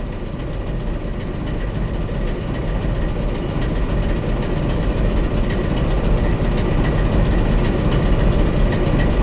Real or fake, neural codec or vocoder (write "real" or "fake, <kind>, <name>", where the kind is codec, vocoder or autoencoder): real